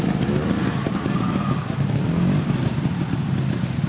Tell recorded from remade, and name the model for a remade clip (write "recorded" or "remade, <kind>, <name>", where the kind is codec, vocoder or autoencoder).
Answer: recorded